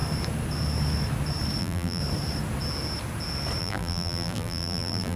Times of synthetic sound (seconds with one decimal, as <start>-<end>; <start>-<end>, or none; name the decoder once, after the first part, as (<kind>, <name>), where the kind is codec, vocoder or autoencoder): 1.6-2.0 (vocoder, BigVGAN v2); 3.6-5.2